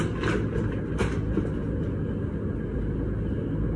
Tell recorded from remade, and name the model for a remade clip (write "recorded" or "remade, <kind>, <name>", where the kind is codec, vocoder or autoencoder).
recorded